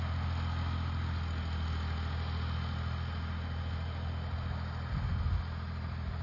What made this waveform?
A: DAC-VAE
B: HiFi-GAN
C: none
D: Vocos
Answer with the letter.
C